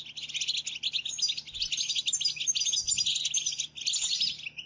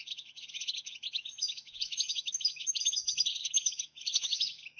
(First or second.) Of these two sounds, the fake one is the second